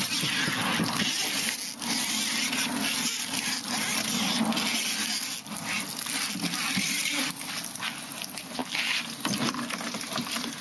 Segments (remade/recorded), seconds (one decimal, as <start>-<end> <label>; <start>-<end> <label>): 0.0-10.6 recorded

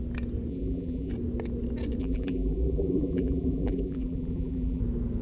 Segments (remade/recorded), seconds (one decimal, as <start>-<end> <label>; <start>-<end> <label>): 0.0-0.5 recorded; 0.5-1.1 remade; 1.1-2.0 recorded; 2.0-4.8 remade; 4.8-5.2 recorded

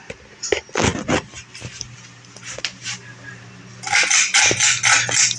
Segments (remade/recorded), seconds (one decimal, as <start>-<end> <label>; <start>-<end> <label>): 0.0-3.7 recorded; 3.7-4.4 remade; 4.4-5.4 recorded

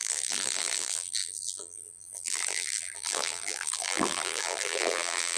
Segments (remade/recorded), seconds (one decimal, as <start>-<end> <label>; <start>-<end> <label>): 0.0-5.4 remade

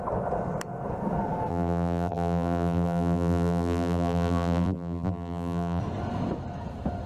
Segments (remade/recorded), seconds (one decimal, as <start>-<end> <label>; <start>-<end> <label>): 0.0-1.5 recorded; 1.5-5.8 remade; 5.8-7.1 recorded

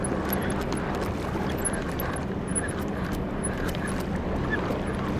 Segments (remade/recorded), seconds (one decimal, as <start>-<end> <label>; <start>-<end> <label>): 0.0-2.5 recorded; 2.5-3.9 remade; 3.9-5.2 recorded